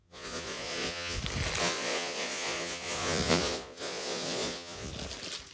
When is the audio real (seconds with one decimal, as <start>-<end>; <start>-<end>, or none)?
1.2-1.6; 4.9-5.5